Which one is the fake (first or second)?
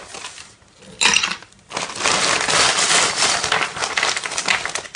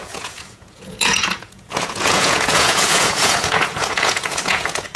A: second